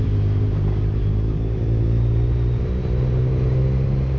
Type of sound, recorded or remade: recorded